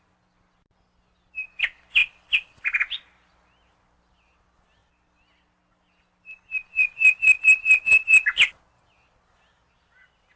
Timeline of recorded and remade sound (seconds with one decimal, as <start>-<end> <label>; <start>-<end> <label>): 0.0-10.4 recorded